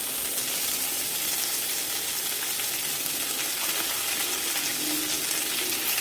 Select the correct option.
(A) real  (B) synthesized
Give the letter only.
A